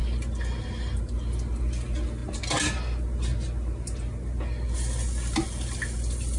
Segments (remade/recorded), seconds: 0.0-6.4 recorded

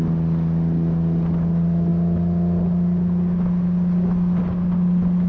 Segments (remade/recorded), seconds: 0.0-5.3 recorded

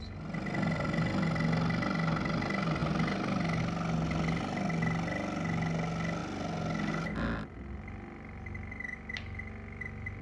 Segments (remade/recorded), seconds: 0.0-10.2 recorded